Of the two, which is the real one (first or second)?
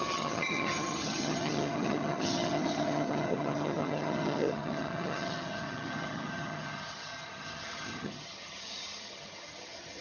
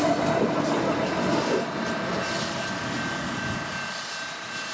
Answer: second